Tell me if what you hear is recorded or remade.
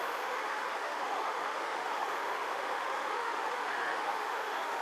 remade